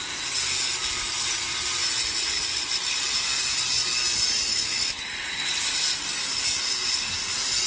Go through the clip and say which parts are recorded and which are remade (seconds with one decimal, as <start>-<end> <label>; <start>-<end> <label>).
0.0-4.5 recorded; 4.5-5.0 remade; 5.0-7.7 recorded